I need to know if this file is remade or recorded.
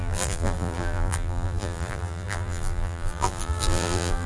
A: remade